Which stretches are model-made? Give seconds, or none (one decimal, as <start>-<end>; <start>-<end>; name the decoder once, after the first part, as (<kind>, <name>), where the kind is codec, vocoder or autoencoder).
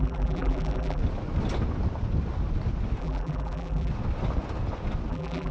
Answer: 0.0-1.0 (vocoder, BigVGAN v2); 3.0-3.9; 5.1-5.5